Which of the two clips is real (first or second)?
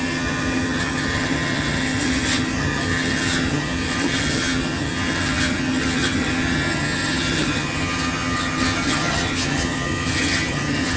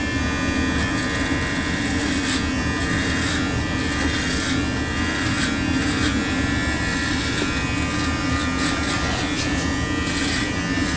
second